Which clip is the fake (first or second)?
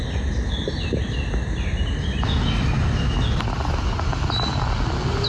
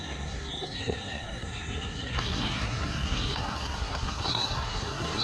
second